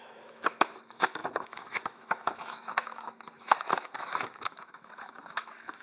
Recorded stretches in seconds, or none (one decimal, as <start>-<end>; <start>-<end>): none